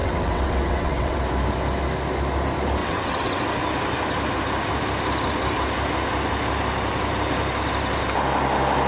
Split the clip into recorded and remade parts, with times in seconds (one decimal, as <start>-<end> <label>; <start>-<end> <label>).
0.0-1.2 remade; 1.2-2.8 recorded; 2.8-3.4 remade; 3.4-8.9 recorded